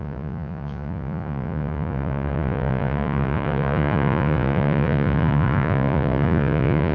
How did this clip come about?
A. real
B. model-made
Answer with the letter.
B